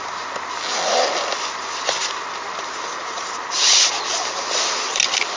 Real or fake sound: real